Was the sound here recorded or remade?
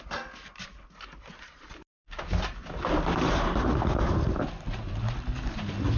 recorded